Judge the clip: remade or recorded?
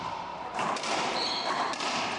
remade